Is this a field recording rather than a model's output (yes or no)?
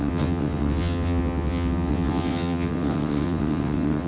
no